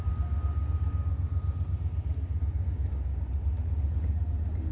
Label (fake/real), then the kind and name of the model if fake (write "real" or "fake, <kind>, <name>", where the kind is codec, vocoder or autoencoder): real